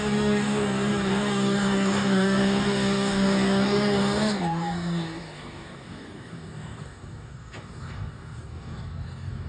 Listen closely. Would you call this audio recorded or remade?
remade